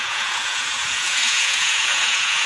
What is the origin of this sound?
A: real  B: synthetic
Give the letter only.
B